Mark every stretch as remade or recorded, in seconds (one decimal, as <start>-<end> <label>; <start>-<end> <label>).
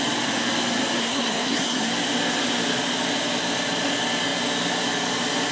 0.0-1.0 recorded; 1.0-1.9 remade; 1.9-5.5 recorded